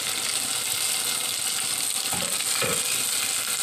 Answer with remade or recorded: recorded